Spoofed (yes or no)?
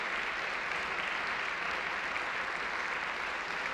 no